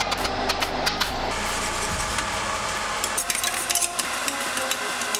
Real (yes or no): yes